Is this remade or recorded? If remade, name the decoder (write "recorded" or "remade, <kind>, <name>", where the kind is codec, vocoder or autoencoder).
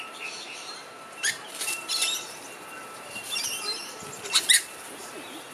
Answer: remade, vocoder, BigVGAN v2